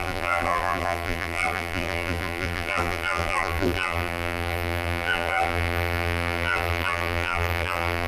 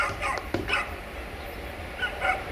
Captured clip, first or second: second